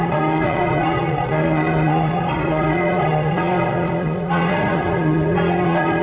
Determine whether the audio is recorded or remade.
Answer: remade